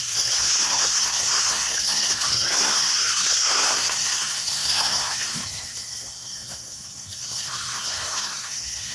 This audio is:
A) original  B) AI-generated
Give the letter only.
B